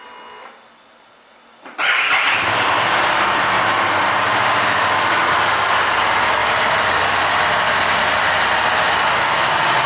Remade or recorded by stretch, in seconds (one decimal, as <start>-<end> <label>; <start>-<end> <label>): 0.0-9.9 recorded

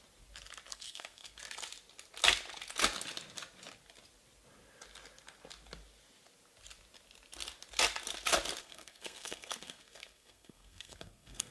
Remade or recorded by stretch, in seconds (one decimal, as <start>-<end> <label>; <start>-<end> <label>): 0.0-0.7 recorded; 0.7-1.4 remade; 1.4-8.6 recorded; 8.6-11.5 remade

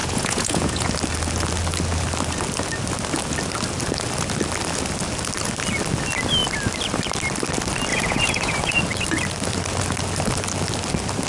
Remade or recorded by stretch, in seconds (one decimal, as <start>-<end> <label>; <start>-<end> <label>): 0.0-0.9 remade; 0.9-7.9 recorded; 7.9-8.8 remade; 8.8-11.3 recorded

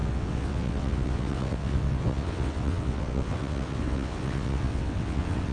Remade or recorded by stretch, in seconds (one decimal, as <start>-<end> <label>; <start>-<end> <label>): 0.0-5.5 remade

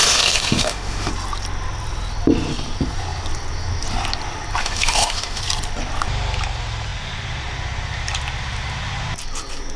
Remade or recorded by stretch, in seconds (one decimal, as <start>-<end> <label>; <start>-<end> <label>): 0.0-1.1 remade; 1.1-4.6 recorded; 4.6-5.4 remade; 5.4-9.8 recorded

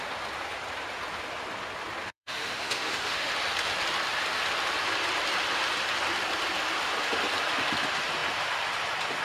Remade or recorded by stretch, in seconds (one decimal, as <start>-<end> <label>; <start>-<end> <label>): 0.0-2.1 recorded; 2.1-3.3 remade; 3.3-9.2 recorded

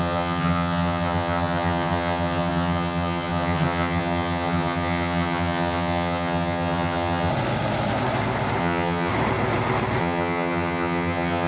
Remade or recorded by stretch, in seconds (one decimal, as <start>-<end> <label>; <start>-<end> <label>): 0.0-7.3 remade; 7.3-8.6 recorded; 8.6-9.1 remade; 9.1-10.0 recorded; 10.0-11.5 remade

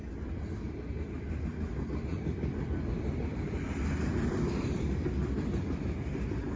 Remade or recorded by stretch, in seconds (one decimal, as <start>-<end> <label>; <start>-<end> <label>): 0.0-2.1 recorded; 2.1-6.1 remade; 6.1-6.6 recorded